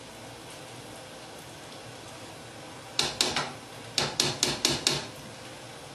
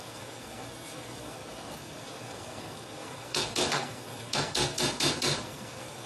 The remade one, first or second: second